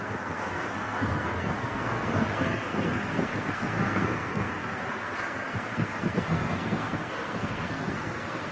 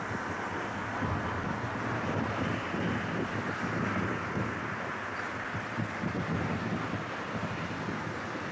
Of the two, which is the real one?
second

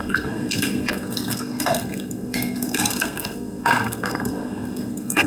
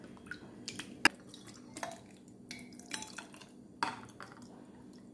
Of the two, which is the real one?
second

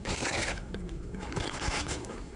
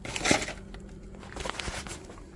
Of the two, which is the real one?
second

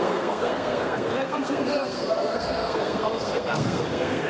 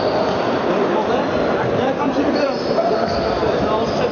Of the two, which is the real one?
second